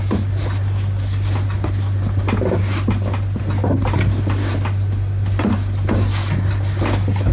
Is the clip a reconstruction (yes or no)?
no